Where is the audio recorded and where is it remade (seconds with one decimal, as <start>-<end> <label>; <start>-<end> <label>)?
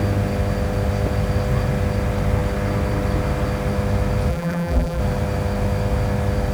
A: 0.0-4.3 recorded; 4.3-5.0 remade; 5.0-6.5 recorded